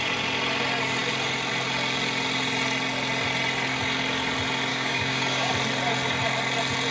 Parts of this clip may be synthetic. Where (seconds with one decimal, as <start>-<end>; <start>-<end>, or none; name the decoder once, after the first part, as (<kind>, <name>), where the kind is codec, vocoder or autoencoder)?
4.7-5.5 (codec, DAC)